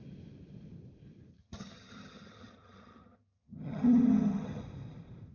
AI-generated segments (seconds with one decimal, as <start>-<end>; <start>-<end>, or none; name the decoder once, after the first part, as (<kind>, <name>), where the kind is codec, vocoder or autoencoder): 1.4-4.6 (vocoder, HiFi-GAN)